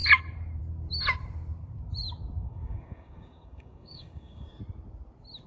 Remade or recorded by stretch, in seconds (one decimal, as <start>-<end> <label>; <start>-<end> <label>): 0.0-2.4 recorded; 2.4-4.6 remade; 4.6-5.5 recorded